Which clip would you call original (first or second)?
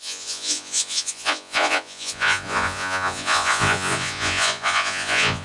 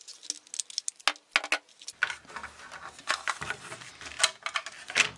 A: second